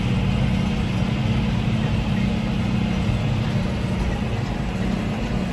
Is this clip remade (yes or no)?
no